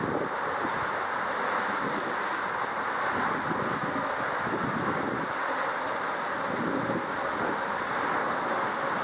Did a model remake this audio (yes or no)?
no